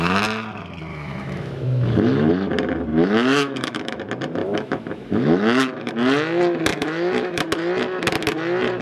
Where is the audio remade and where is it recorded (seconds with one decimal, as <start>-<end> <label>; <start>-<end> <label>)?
0.0-0.9 recorded; 0.9-2.3 remade; 2.3-2.9 recorded; 2.9-4.0 remade; 4.0-4.4 recorded; 4.4-5.9 remade; 5.9-6.7 recorded; 6.7-7.4 remade; 7.4-8.8 recorded